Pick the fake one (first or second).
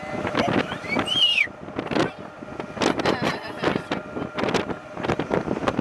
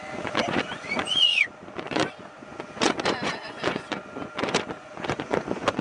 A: second